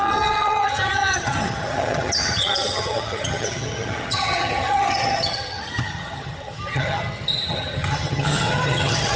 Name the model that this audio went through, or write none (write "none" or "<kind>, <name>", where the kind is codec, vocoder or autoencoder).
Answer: vocoder, HiFi-GAN